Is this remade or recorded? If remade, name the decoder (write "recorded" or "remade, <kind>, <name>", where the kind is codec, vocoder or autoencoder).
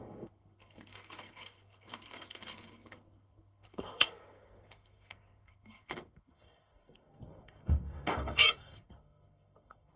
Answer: remade, codec, SNAC